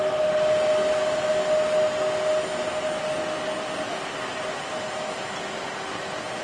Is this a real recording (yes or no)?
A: yes